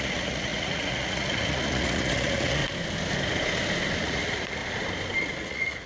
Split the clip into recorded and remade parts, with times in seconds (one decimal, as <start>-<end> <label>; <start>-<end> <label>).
0.0-2.6 remade; 2.6-4.0 recorded; 4.0-4.6 remade; 4.6-5.2 recorded; 5.2-5.9 remade